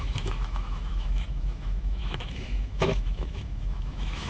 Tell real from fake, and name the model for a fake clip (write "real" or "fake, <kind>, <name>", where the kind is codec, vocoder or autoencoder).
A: fake, autoencoder, DAC-VAE